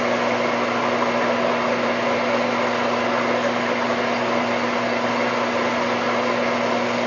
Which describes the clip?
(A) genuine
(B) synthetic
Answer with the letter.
A